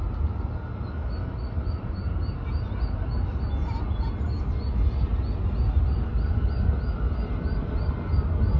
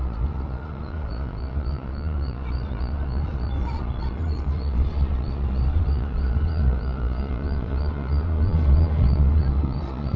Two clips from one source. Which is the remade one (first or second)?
second